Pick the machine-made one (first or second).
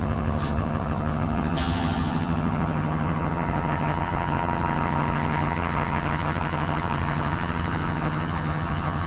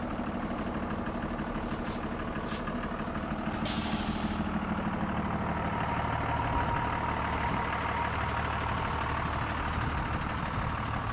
first